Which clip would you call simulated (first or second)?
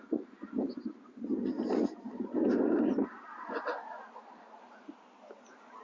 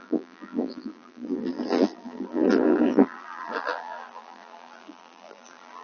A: second